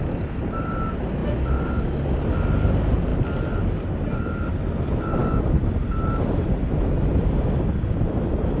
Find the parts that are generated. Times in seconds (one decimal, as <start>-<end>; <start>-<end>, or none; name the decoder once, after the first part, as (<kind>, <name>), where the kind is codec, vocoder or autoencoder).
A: 5.2-7.7 (vocoder, BigVGAN v2)